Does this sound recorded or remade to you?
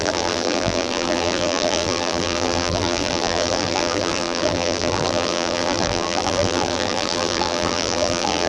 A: remade